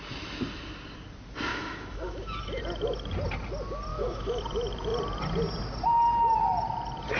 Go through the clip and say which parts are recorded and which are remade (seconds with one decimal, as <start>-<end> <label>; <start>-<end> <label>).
0.0-1.5 recorded; 1.5-2.6 remade; 2.6-3.9 recorded; 3.9-4.4 remade; 4.4-7.2 recorded